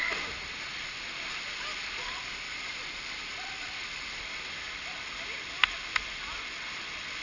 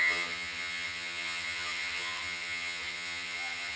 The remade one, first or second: second